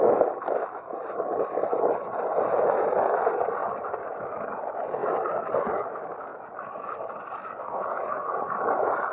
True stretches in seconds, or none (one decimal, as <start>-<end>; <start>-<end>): 0.0-5.0; 5.7-9.1